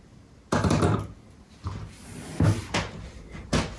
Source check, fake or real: real